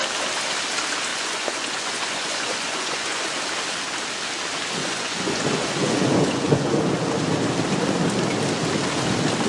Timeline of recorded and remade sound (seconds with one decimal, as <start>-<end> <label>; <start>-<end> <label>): 0.0-1.1 recorded; 1.1-3.2 remade; 3.2-4.8 recorded; 4.8-6.8 remade; 6.8-9.5 recorded